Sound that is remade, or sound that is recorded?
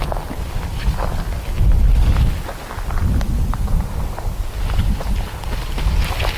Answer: recorded